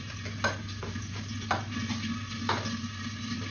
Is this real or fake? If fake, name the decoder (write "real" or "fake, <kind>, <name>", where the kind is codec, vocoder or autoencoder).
real